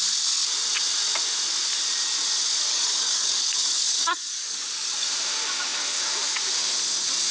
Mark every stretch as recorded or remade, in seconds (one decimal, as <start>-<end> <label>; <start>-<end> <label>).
0.0-2.7 recorded; 2.7-5.1 remade; 5.1-7.3 recorded